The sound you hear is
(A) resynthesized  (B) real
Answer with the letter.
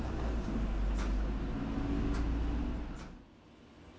B